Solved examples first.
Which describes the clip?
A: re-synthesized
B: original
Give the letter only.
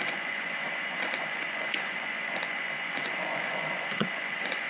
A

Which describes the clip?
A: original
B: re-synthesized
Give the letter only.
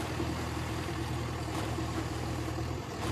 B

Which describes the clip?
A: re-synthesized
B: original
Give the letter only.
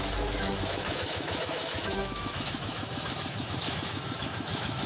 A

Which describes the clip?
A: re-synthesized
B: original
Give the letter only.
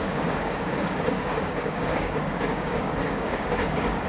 A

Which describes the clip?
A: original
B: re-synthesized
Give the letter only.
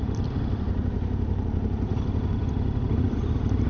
B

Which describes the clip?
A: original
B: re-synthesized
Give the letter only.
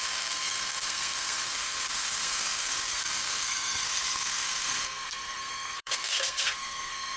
B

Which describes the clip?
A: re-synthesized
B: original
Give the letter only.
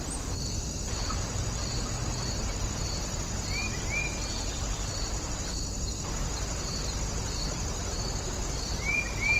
B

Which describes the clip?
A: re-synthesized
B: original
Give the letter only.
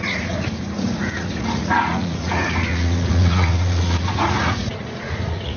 A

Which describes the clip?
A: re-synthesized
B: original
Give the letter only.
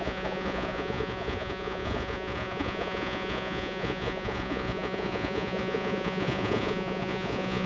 A